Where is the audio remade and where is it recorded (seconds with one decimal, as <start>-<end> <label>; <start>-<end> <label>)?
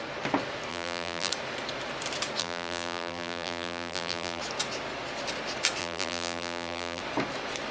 0.0-0.7 recorded; 0.7-1.3 remade; 1.3-2.4 recorded; 2.4-4.4 remade; 4.4-5.8 recorded; 5.8-7.0 remade; 7.0-7.7 recorded